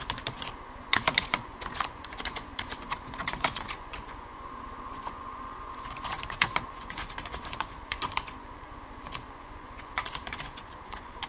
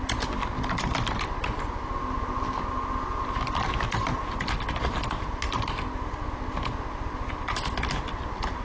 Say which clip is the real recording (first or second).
second